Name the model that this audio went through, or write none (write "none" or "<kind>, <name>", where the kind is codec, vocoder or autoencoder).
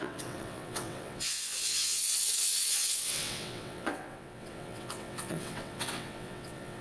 vocoder, WaveNeXt